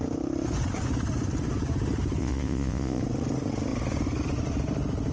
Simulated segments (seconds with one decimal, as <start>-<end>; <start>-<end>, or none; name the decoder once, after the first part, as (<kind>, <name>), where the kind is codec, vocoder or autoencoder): 2.2-3.0 (vocoder, Vocos)